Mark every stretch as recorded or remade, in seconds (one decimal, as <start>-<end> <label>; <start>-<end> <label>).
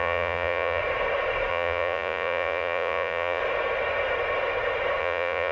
0.0-0.8 remade; 0.8-1.5 recorded; 1.5-3.4 remade; 3.4-5.0 recorded; 5.0-5.5 remade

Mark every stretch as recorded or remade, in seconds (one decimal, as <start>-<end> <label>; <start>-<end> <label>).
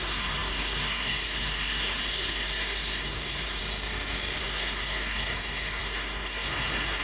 0.0-3.6 remade; 3.6-4.4 recorded; 4.4-7.0 remade